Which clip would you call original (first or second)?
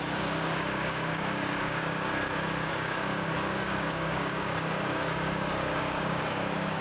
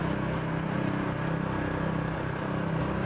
second